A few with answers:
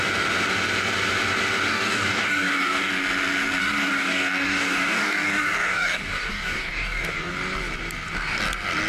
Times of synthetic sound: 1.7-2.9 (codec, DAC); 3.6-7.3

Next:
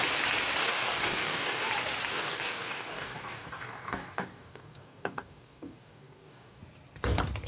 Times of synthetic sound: 0.6-1.7 (codec, DAC); 2.1-6.6

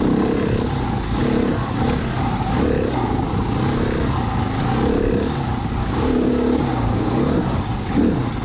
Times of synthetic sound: 5.8-7.1 (codec, DAC)